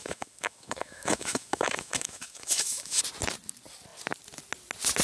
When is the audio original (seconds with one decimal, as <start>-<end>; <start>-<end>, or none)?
3.0-5.0